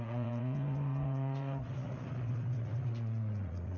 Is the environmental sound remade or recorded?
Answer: remade